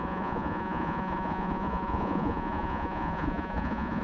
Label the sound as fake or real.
fake